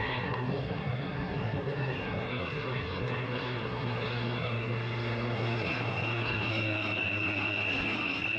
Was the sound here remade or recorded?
remade